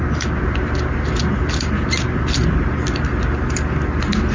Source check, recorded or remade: recorded